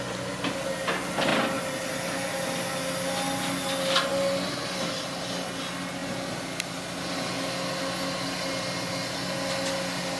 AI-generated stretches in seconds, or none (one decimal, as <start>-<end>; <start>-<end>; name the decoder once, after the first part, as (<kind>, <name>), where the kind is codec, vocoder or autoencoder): none